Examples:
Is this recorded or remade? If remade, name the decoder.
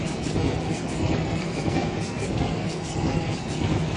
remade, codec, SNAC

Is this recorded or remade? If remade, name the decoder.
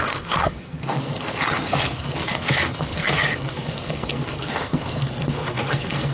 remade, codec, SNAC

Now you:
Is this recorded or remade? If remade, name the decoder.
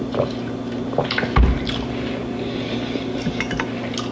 recorded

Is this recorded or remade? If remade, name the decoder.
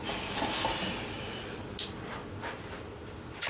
recorded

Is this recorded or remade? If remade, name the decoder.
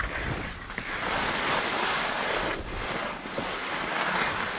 recorded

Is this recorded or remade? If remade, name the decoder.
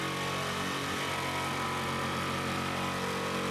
recorded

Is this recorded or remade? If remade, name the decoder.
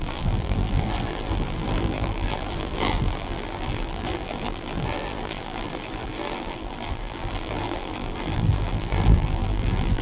remade, vocoder, BigVGAN v2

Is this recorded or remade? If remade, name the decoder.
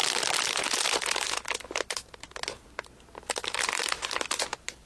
recorded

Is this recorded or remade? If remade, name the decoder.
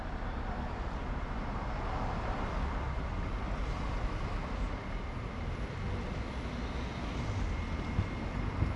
recorded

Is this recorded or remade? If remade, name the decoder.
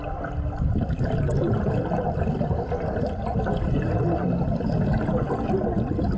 recorded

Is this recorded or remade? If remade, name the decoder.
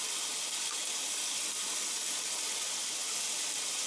recorded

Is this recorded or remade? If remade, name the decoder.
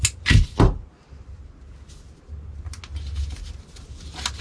recorded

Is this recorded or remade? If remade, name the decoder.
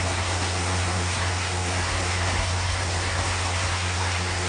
remade, codec, SNAC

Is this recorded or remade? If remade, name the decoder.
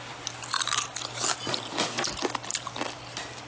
recorded